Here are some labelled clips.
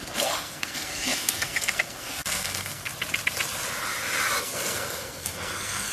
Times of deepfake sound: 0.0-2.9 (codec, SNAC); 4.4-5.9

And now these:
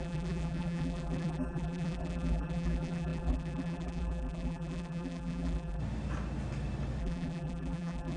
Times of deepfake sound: 0.0-5.8 (vocoder, BigVGAN v2); 7.0-8.2